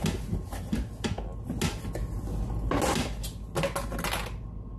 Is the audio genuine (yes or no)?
yes